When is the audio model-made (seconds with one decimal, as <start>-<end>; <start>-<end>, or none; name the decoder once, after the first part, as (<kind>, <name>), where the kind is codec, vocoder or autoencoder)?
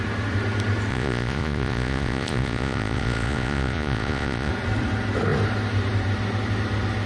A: 0.9-4.5 (vocoder, Vocos)